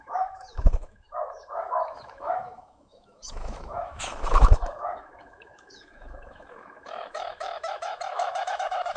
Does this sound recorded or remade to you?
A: remade